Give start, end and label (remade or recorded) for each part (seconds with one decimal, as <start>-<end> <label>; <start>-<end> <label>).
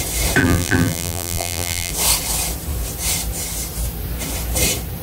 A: 0.0-0.4 recorded; 0.4-1.9 remade; 1.9-5.0 recorded